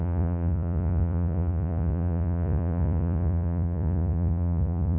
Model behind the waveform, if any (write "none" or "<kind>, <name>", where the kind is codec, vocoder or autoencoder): vocoder, Vocos